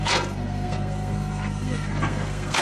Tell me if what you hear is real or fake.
fake